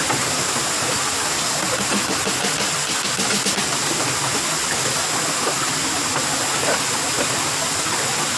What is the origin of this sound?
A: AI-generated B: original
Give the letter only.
B